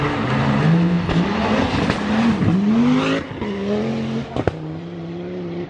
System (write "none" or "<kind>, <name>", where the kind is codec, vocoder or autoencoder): none